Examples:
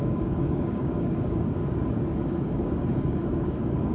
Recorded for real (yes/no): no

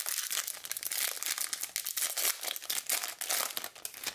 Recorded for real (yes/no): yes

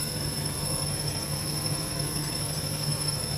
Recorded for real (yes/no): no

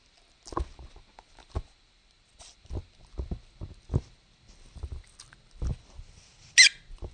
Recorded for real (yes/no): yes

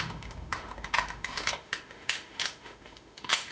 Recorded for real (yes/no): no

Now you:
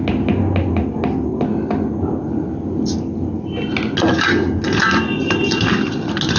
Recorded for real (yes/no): yes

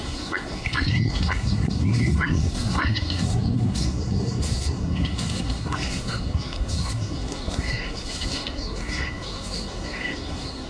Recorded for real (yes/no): no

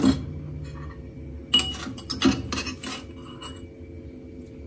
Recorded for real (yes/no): yes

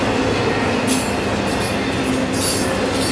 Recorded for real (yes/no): yes